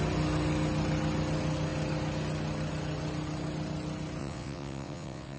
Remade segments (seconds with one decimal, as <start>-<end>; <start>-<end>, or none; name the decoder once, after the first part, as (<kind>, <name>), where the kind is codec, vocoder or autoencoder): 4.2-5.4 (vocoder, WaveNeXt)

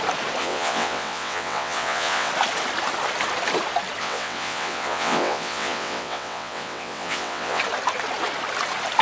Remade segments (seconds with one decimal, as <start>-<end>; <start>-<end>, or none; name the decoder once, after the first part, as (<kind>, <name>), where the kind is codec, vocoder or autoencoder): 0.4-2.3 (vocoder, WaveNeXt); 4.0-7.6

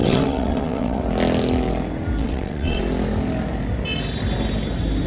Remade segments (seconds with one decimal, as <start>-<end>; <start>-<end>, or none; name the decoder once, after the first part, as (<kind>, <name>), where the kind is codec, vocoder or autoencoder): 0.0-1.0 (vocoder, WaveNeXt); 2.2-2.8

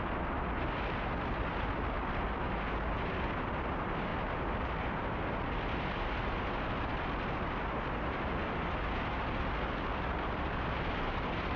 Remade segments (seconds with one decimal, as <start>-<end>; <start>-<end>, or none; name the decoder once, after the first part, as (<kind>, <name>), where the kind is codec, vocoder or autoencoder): none